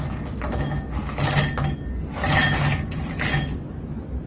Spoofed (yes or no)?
no